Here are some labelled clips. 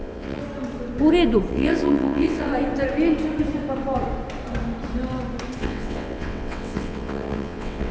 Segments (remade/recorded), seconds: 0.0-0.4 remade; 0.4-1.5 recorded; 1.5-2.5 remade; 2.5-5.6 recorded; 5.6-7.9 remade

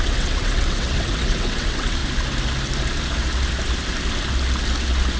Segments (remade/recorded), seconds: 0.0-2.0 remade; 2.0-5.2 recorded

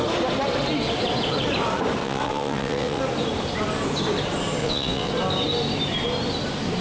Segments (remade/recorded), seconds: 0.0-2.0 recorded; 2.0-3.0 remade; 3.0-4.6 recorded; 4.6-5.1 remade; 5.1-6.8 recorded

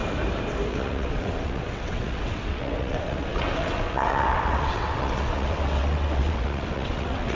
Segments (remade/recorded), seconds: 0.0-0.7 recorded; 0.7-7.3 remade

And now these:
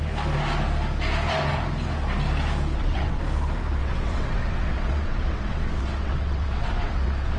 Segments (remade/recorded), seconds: 0.0-2.7 recorded; 2.7-3.2 remade; 3.2-3.8 recorded; 3.8-7.4 remade